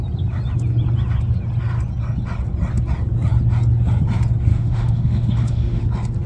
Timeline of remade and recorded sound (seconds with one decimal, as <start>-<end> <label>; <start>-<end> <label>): 0.0-4.5 recorded; 4.5-5.8 remade; 5.8-6.3 recorded